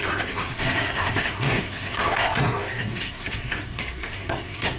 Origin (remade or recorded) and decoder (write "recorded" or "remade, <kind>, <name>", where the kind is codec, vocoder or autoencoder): remade, codec, SNAC